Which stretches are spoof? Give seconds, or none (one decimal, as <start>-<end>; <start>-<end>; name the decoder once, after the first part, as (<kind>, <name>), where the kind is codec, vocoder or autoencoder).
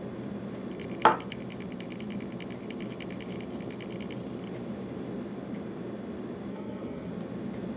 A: 6.5-7.1 (codec, SNAC)